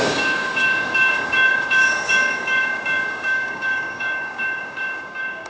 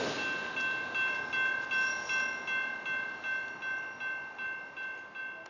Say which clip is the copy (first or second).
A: first